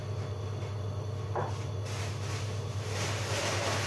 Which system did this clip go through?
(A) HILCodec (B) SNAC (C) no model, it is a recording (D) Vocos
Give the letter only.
C